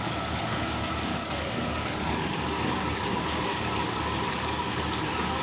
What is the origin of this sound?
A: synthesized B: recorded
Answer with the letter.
A